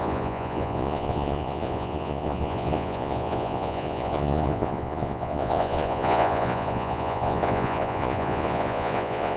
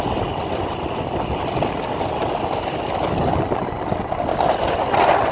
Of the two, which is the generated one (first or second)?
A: first